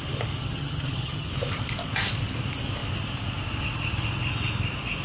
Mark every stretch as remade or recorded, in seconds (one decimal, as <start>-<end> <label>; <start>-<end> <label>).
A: 0.0-0.4 recorded; 0.4-1.3 remade; 1.3-5.0 recorded